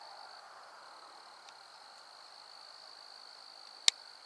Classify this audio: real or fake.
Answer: real